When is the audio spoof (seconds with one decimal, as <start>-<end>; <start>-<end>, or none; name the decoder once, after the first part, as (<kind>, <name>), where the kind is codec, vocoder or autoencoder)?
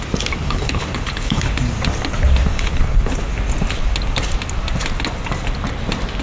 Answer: 0.4-1.6 (codec, HILCodec); 2.5-3.3